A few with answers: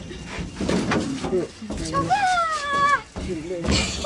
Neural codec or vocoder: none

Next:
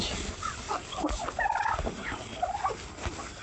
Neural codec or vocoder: none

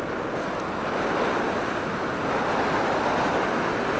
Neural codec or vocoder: none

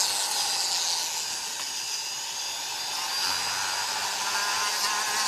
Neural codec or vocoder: none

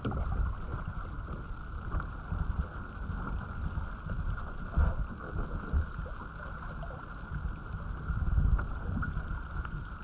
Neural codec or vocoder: none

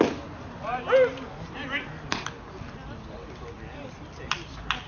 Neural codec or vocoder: none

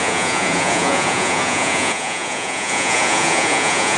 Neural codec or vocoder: vocoder, Vocos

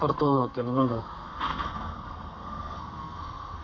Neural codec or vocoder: codec, SNAC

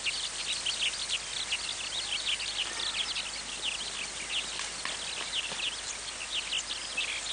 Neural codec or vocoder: none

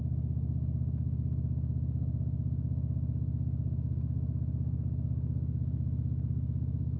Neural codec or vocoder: autoencoder, DAC-VAE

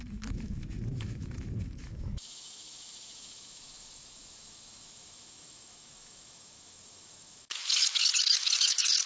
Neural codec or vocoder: autoencoder, DAC-VAE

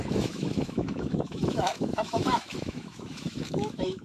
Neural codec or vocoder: autoencoder, DAC-VAE